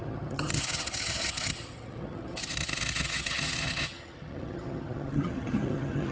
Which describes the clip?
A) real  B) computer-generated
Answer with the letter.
B